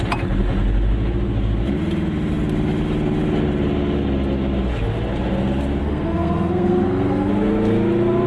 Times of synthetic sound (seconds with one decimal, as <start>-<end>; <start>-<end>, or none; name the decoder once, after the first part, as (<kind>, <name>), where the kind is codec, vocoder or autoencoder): 5.8-7.3 (codec, SNAC)